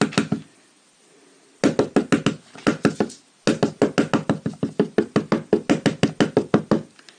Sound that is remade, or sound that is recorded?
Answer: recorded